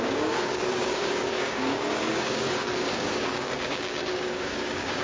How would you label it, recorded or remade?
remade